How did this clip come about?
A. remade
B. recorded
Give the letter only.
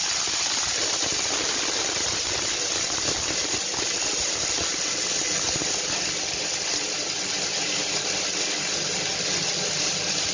B